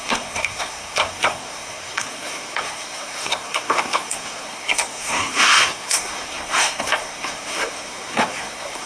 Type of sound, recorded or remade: remade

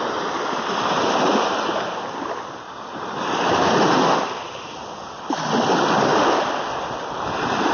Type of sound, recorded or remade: recorded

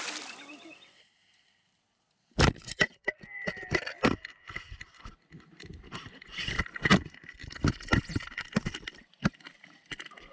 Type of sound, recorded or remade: remade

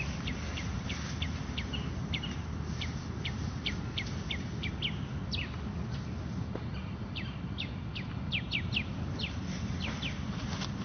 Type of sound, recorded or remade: recorded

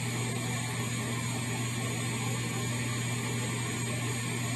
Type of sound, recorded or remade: recorded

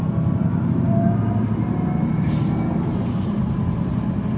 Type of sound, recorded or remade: remade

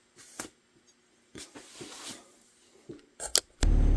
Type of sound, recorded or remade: recorded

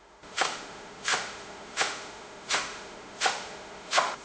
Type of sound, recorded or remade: remade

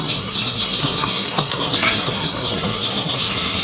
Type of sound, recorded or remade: remade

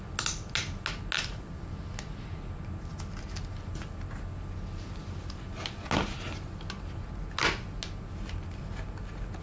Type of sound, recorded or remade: recorded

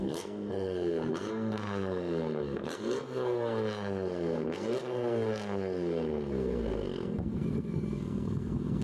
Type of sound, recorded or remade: remade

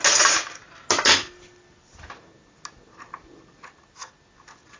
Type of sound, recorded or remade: recorded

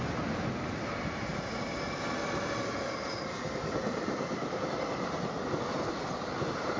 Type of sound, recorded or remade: recorded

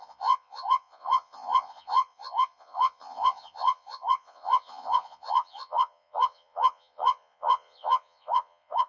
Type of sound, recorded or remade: remade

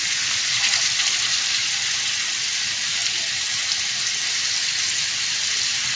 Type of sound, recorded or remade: recorded